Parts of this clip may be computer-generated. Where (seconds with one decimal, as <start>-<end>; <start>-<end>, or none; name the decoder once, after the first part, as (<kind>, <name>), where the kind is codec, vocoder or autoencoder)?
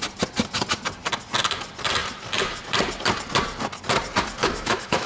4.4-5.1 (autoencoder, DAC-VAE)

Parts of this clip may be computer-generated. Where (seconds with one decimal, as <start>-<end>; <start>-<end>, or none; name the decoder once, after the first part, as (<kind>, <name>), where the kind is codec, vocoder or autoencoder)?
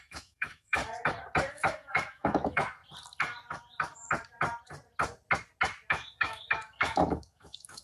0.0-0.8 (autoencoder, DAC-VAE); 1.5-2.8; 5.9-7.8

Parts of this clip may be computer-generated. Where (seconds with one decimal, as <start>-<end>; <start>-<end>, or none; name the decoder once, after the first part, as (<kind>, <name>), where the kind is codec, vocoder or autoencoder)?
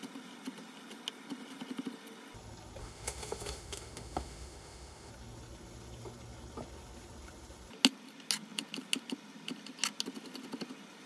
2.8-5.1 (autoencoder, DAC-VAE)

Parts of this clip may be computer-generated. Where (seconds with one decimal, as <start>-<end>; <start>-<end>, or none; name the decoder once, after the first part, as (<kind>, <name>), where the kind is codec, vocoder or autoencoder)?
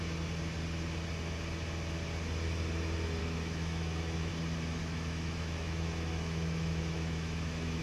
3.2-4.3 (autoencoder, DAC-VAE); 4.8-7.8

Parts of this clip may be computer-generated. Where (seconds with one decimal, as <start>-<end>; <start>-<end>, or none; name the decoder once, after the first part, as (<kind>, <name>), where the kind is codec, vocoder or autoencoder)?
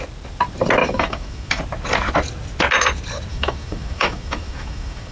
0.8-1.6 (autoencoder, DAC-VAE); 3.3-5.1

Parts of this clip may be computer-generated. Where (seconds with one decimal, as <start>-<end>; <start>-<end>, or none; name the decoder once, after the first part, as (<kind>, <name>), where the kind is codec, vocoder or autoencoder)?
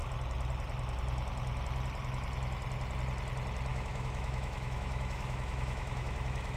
3.7-6.6 (autoencoder, DAC-VAE)